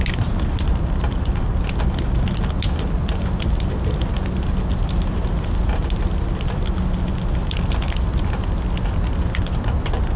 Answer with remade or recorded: recorded